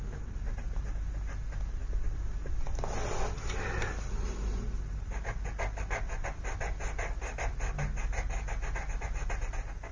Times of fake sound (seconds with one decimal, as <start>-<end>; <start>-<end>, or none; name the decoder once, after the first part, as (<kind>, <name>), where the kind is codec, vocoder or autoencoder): none